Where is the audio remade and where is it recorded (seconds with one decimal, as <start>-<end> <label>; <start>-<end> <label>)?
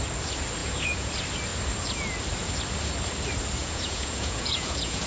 0.0-0.6 recorded; 0.6-1.1 remade; 1.1-3.6 recorded; 3.6-5.1 remade